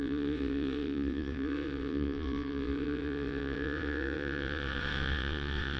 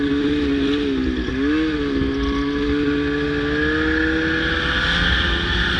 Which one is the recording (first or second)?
second